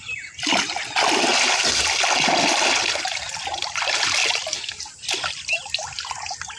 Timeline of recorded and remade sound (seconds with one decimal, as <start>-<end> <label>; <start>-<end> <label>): 0.0-6.6 recorded